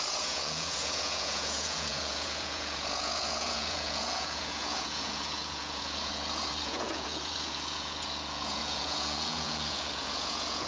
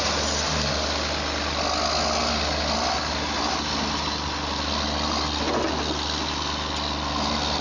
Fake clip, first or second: first